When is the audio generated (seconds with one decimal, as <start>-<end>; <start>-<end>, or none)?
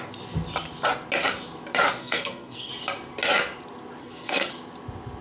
2.0-2.7; 4.0-4.5